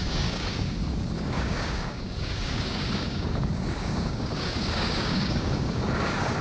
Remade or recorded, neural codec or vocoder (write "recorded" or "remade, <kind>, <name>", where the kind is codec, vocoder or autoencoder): remade, codec, DAC